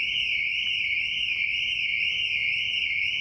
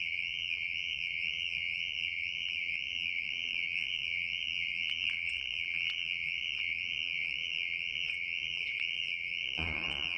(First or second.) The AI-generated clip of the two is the second